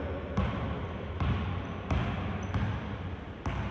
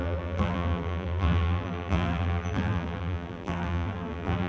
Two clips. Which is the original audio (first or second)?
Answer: first